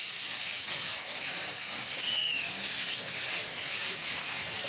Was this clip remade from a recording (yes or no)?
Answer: yes